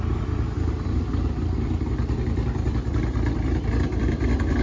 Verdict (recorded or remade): remade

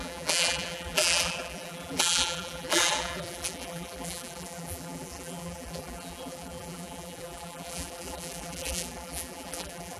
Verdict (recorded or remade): remade